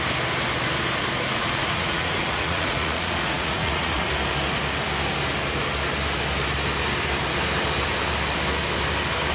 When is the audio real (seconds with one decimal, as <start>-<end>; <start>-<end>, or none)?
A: 0.0-1.3; 4.1-9.3